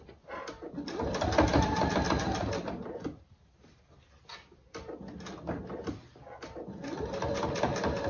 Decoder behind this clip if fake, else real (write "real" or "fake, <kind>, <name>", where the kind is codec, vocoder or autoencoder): real